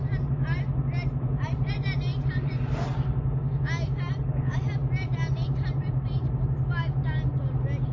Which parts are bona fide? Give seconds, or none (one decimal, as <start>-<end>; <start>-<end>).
0.0-2.1; 2.6-4.8; 6.5-7.9